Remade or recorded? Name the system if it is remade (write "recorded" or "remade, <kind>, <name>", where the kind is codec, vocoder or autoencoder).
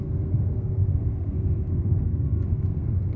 remade, codec, SNAC